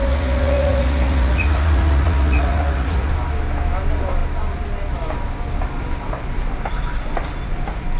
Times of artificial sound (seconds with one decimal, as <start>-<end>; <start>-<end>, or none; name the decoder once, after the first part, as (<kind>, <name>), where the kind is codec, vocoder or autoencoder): 0.0-3.1 (vocoder, Vocos)